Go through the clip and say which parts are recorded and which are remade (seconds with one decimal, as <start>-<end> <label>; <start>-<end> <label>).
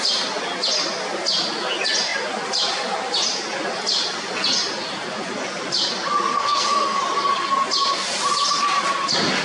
0.0-6.3 recorded; 6.3-7.0 remade; 7.0-9.4 recorded